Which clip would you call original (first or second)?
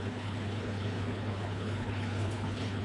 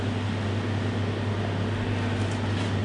second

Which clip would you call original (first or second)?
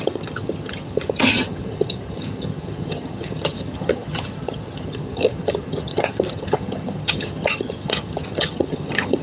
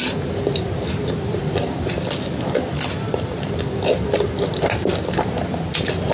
second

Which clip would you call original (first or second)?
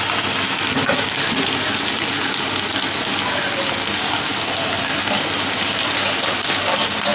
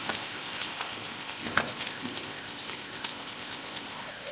first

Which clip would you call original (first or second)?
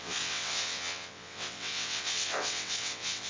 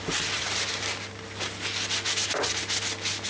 second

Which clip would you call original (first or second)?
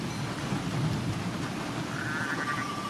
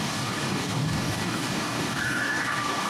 first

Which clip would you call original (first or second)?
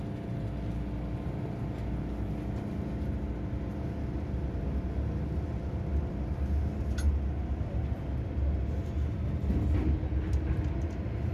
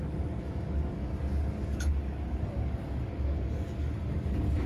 first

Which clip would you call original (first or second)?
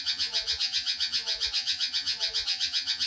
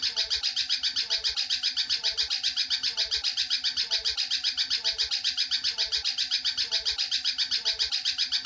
second